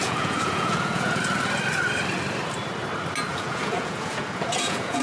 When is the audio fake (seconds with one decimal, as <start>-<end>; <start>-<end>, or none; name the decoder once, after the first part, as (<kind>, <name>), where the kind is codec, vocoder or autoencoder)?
0.0-1.2 (vocoder, Vocos); 3.3-5.0